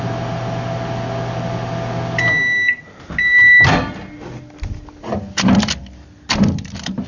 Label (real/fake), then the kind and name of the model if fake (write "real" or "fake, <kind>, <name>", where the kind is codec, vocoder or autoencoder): real